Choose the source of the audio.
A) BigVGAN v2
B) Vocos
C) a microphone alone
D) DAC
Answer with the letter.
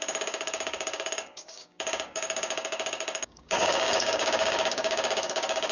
D